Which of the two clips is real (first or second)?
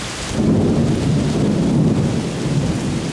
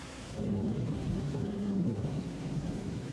first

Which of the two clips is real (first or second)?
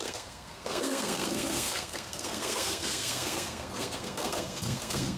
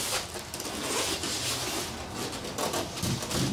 second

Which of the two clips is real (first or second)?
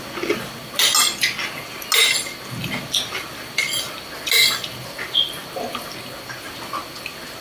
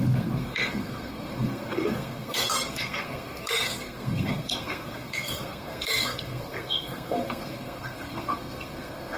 first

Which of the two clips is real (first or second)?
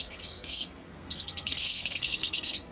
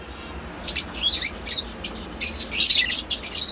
second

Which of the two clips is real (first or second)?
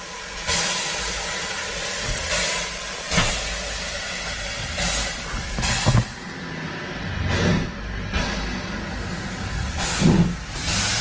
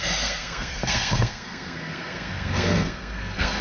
first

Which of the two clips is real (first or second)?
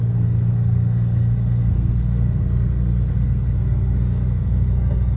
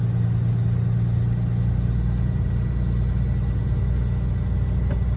second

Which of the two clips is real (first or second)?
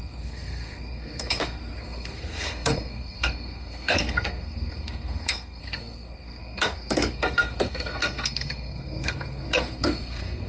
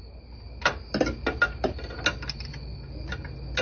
second